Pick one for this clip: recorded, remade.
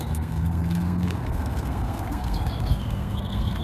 remade